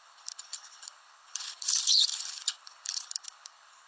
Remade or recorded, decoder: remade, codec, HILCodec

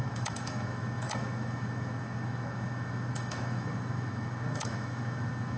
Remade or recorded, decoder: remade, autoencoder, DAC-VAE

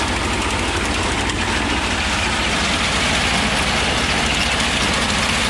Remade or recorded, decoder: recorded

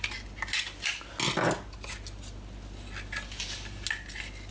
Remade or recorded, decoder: recorded